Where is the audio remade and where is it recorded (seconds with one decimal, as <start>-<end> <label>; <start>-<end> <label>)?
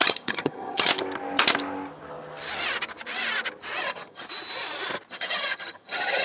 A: 0.0-0.9 remade; 0.9-3.8 recorded; 3.8-4.2 remade; 4.2-5.1 recorded; 5.1-6.2 remade